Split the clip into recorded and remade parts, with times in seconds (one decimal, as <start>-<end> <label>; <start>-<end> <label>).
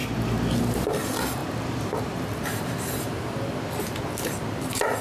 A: 0.0-5.0 recorded